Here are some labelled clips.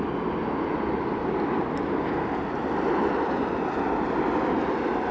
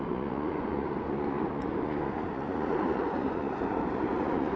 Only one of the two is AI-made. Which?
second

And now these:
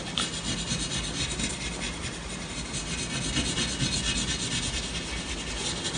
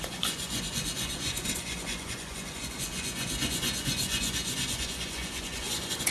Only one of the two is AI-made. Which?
second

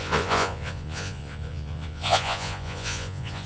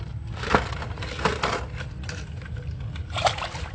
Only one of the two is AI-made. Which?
first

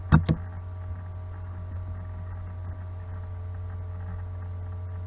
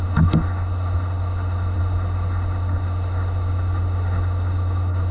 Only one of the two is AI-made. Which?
second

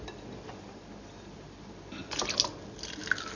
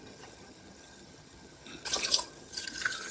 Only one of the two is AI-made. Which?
second